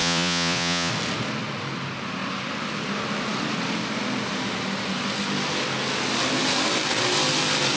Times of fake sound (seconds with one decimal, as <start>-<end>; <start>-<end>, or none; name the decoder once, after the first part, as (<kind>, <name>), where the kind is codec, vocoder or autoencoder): 0.0-0.9 (vocoder, Vocos)